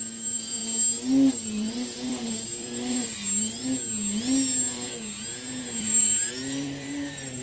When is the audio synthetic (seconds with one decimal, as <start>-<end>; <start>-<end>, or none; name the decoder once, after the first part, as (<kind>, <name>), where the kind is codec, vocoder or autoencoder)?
0.0-0.6 (vocoder, BigVGAN v2); 1.3-3.1; 5.8-7.4